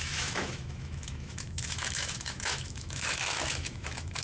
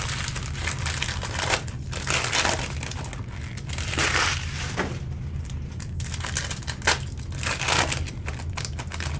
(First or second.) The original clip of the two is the second